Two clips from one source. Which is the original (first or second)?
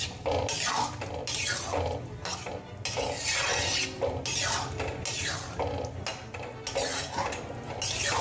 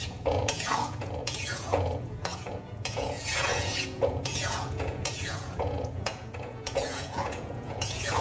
first